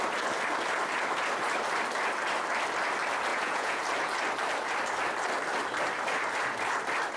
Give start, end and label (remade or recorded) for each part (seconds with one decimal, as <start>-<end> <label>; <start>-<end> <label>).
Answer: 0.0-3.3 recorded; 3.3-3.8 remade; 3.8-7.2 recorded